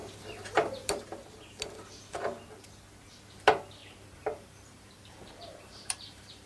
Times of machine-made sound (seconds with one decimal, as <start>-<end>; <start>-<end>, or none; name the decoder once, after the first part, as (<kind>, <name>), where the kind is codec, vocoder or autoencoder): 3.8-6.5 (vocoder, BigVGAN v2)